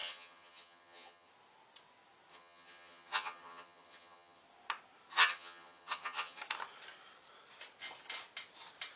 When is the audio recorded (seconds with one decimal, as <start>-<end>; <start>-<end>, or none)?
1.3-2.3; 4.4-5.1; 6.4-9.0